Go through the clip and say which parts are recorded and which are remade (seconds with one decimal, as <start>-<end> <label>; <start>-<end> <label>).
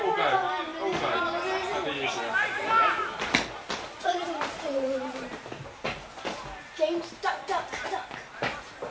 0.0-4.1 recorded; 4.1-5.4 remade; 5.4-8.9 recorded